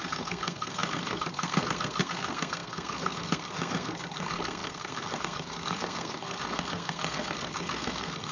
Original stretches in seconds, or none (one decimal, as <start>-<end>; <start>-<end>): none